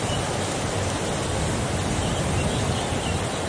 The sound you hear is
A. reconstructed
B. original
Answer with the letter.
B